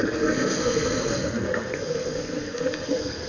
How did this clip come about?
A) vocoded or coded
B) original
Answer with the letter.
A